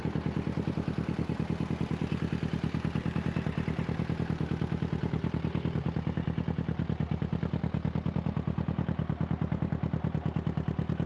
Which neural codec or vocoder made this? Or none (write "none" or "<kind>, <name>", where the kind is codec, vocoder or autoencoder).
none